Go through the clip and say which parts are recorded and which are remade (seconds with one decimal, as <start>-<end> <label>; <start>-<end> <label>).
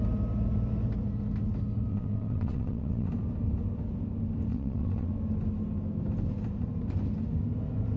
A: 0.0-1.9 recorded; 1.9-3.1 remade; 3.1-4.5 recorded; 4.5-5.1 remade; 5.1-8.0 recorded